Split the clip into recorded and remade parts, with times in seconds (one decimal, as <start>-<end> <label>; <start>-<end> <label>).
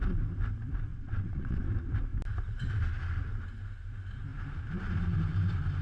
0.0-0.9 recorded; 0.9-1.6 remade; 1.6-5.8 recorded